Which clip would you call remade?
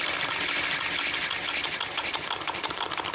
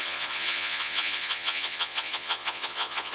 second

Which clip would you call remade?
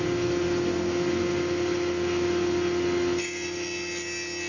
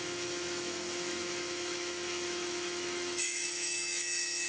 second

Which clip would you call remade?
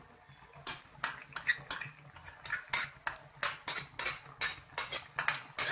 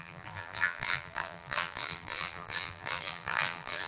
second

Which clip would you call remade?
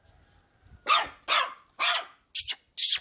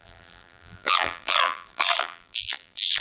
second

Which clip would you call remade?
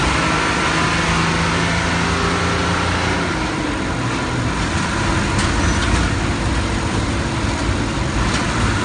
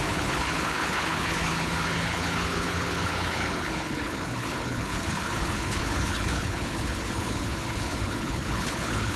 second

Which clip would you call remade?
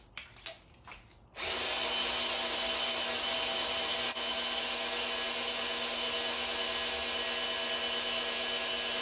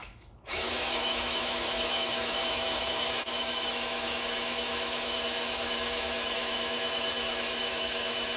second